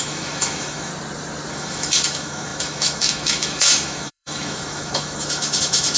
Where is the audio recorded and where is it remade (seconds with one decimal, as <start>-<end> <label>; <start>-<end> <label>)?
0.0-0.9 remade; 0.9-1.5 recorded; 1.5-6.0 remade